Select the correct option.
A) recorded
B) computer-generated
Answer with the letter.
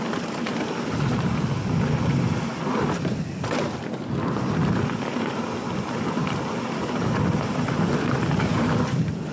A